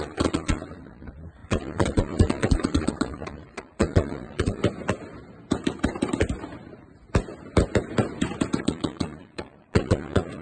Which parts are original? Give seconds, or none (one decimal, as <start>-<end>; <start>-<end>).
4.6-8.6